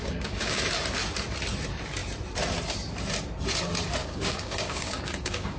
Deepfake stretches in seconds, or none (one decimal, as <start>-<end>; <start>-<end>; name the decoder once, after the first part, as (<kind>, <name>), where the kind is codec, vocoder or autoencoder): 0.0-0.6 (codec, DAC); 4.0-5.6